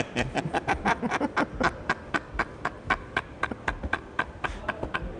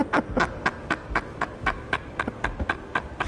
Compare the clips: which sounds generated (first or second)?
first